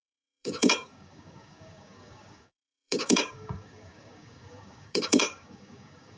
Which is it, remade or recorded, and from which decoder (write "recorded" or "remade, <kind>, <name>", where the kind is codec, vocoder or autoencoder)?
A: remade, codec, DAC